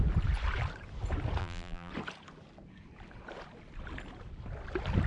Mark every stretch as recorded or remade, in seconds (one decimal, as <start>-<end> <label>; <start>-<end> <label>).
0.0-1.4 recorded; 1.4-1.9 remade; 1.9-5.1 recorded

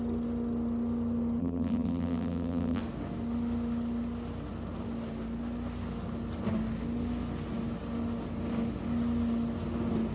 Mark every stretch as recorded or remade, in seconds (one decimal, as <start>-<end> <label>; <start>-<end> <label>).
0.0-1.4 recorded; 1.4-2.8 remade; 2.8-10.1 recorded

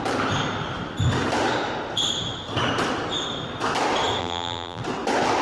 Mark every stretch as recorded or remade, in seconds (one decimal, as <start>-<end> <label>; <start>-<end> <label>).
0.0-4.2 recorded; 4.2-4.8 remade; 4.8-5.4 recorded

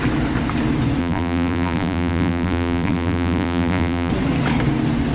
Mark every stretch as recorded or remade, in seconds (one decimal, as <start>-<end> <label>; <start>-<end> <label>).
0.0-1.0 recorded; 1.0-4.1 remade; 4.1-5.1 recorded

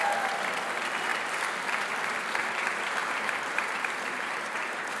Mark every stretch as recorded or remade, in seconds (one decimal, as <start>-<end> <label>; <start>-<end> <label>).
0.0-3.0 recorded; 3.0-5.0 remade

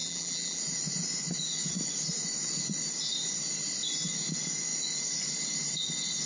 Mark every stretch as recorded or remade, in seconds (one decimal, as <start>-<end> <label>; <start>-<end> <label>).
0.0-0.6 remade; 0.6-6.3 recorded

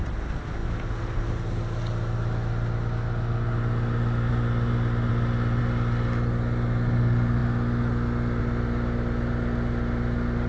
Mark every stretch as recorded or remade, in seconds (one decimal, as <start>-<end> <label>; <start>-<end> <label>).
0.0-10.5 recorded

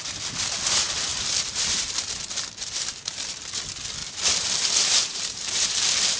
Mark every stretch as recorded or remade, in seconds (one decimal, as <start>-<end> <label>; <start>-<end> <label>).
0.0-1.1 recorded; 1.1-3.3 remade; 3.3-4.0 recorded; 4.0-4.6 remade; 4.6-5.0 recorded; 5.0-6.2 remade